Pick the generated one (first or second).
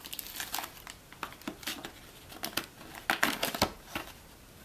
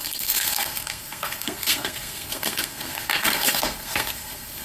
second